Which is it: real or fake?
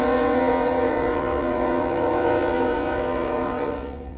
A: fake